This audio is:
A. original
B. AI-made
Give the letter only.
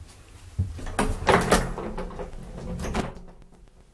A